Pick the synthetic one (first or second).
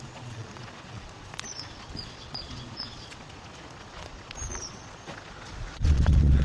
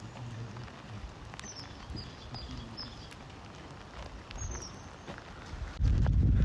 first